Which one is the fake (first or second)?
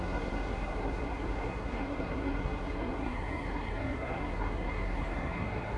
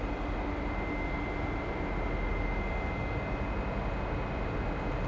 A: first